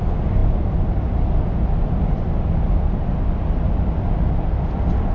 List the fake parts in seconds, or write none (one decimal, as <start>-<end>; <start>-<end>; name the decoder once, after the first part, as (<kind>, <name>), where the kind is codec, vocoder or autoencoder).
none

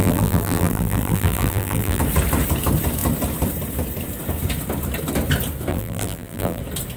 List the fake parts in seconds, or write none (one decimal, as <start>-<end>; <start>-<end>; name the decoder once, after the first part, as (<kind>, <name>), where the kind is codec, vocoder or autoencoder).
0.0-2.0 (vocoder, BigVGAN v2); 5.7-6.6

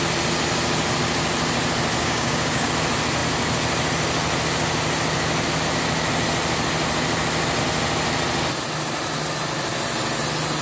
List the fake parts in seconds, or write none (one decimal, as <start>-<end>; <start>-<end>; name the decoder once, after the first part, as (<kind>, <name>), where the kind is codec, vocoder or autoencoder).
2.0-2.7 (codec, DAC)